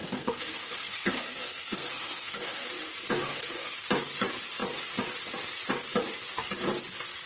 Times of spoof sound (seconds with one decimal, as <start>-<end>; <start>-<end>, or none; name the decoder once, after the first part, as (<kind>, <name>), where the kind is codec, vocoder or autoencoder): 0.0-2.7 (codec, SNAC); 3.2-3.9